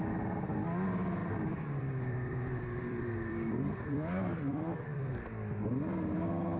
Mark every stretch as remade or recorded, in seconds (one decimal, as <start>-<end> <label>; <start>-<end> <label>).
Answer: 0.0-1.2 recorded; 1.2-5.1 remade; 5.1-6.6 recorded